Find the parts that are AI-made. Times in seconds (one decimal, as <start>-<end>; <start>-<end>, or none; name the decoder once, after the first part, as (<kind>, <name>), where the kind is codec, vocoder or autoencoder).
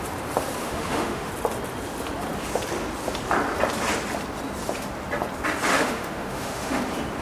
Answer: 0.6-1.3 (autoencoder, DAC-VAE); 5.7-6.8